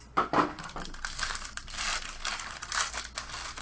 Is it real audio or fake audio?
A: real